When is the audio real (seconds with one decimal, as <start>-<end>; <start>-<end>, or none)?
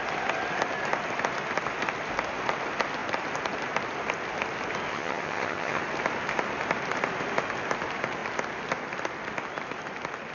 0.0-4.9; 5.8-10.3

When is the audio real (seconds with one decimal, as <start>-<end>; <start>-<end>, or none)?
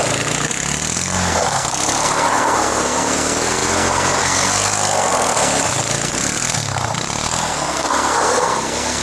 none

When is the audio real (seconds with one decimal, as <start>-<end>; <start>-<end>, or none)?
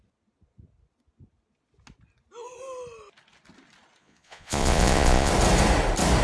0.0-4.0; 5.3-6.2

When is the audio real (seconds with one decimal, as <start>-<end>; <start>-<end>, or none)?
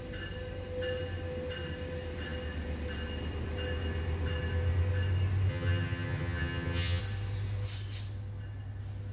0.0-5.5; 7.0-9.1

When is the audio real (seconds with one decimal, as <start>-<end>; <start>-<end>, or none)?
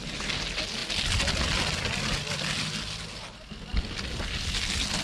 0.0-5.0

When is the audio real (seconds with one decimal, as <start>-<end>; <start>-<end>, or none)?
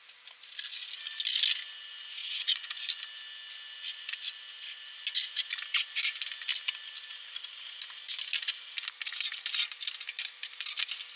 0.0-2.2; 3.0-11.2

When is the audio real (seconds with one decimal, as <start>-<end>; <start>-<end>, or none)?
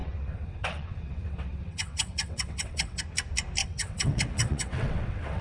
3.0-3.6